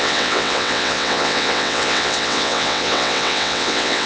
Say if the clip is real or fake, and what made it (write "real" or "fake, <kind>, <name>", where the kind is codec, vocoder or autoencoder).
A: fake, vocoder, WaveNeXt